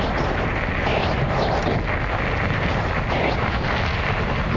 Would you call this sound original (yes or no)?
yes